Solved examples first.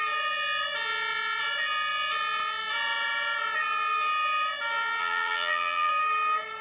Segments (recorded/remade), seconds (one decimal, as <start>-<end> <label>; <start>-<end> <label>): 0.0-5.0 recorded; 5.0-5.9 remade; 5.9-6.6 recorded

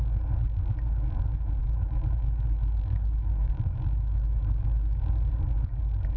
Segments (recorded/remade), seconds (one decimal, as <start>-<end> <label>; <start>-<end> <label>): 0.0-1.6 recorded; 1.6-5.3 remade; 5.3-6.2 recorded

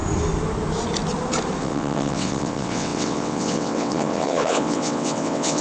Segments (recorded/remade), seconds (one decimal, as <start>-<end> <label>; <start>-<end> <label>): 0.0-1.6 recorded; 1.6-5.6 remade

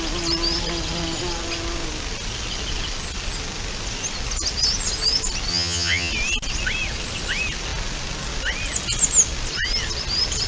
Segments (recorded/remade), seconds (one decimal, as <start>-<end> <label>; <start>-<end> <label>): 0.0-5.5 recorded; 5.5-6.1 remade; 6.1-10.5 recorded